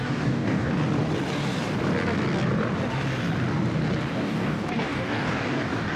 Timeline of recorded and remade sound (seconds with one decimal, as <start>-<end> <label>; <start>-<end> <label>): 0.0-0.7 remade; 0.7-4.1 recorded; 4.1-6.0 remade